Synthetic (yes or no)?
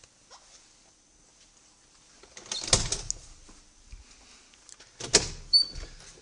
no